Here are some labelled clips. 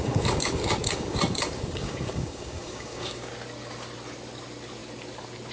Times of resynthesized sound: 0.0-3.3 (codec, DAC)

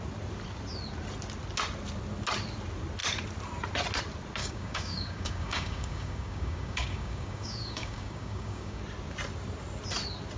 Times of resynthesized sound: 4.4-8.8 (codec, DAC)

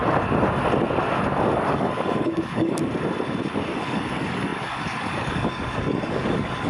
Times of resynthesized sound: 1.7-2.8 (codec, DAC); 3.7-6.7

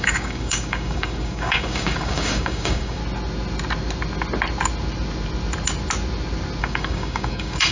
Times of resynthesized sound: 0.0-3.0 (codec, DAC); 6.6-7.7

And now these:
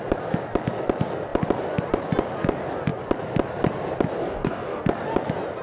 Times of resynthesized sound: 4.2-4.8 (codec, DAC)

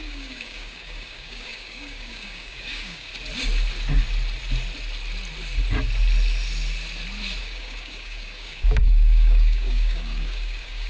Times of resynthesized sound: 0.0-3.1 (codec, DAC); 7.4-10.9